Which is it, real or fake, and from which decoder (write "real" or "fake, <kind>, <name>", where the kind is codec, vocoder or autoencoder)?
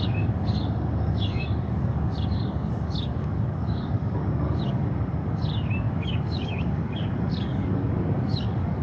fake, codec, DAC